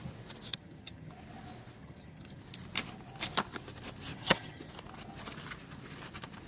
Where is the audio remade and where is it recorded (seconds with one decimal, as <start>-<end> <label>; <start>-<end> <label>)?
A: 0.0-0.5 recorded; 0.5-1.1 remade; 1.1-1.8 recorded; 1.8-2.4 remade; 2.4-4.1 recorded; 4.1-4.7 remade; 4.7-6.5 recorded